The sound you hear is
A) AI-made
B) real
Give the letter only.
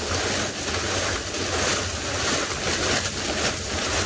B